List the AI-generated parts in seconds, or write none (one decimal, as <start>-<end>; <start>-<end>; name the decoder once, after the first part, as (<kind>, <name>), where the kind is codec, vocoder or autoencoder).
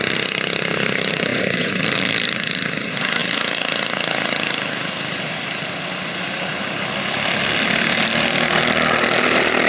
1.3-1.8 (vocoder, Vocos)